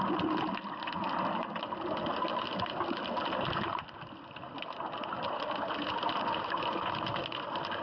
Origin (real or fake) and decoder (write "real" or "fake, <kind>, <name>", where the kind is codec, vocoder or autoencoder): real